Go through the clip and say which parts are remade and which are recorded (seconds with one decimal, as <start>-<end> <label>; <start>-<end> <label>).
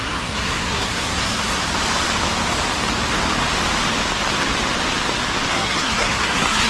0.0-1.6 remade; 1.6-5.5 recorded; 5.5-6.7 remade